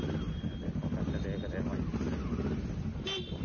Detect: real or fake real